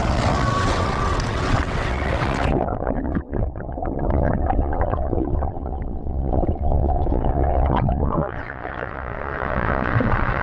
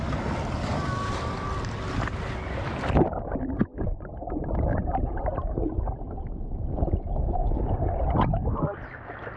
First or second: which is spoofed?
first